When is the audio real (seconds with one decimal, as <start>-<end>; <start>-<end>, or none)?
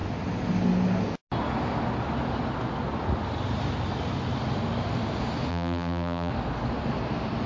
0.0-5.5; 6.3-7.5